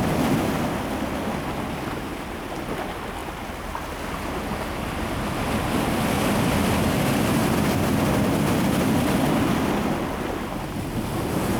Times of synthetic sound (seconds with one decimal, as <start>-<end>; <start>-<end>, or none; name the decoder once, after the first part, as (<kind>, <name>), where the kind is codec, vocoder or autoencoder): none